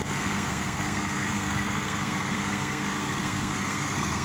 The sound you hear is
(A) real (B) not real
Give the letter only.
B